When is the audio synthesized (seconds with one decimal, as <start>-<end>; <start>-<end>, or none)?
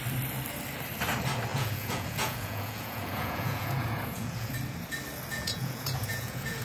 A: 1.5-4.5; 5.3-6.6